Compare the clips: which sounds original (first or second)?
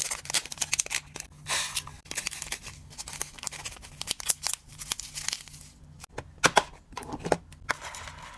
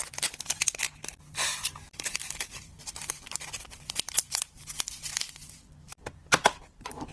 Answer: first